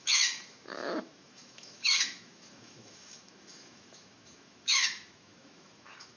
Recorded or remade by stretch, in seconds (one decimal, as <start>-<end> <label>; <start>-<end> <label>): 0.0-6.2 remade